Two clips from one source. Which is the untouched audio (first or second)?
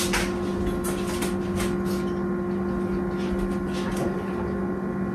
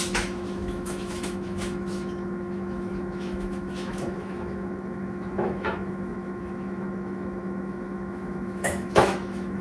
first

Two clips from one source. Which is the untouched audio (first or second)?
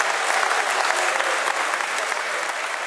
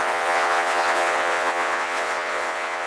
first